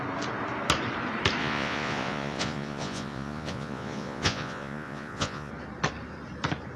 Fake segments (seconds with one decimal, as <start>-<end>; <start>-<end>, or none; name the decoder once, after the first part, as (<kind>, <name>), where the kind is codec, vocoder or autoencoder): 1.4-5.5 (vocoder, Vocos)